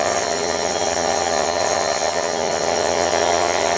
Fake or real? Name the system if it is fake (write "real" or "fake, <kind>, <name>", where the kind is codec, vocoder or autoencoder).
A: fake, vocoder, HiFi-GAN